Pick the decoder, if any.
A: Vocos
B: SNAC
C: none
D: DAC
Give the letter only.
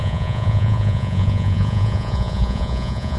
A